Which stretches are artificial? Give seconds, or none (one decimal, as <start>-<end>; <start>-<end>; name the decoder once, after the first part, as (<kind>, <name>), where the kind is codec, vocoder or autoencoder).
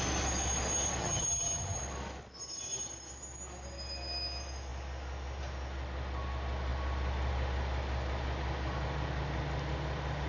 1.0-1.8 (vocoder, HiFi-GAN)